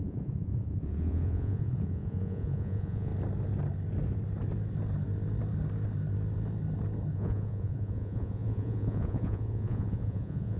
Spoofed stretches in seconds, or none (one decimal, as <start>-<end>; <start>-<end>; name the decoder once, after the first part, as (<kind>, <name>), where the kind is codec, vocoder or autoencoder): 0.0-3.1 (vocoder, Vocos); 7.1-10.6